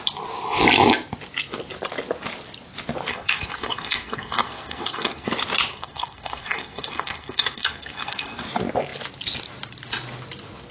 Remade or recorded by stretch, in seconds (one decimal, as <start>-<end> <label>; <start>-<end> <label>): 0.0-3.1 recorded; 3.1-5.3 remade; 5.3-5.7 recorded; 5.7-8.4 remade; 8.4-10.7 recorded